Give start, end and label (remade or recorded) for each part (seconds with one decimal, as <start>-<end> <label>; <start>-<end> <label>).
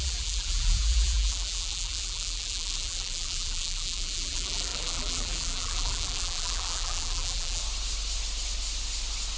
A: 0.0-7.6 remade; 7.6-9.4 recorded